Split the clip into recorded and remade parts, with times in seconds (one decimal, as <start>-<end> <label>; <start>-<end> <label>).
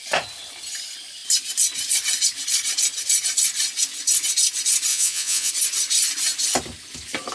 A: 0.0-4.9 recorded; 4.9-5.5 remade; 5.5-7.3 recorded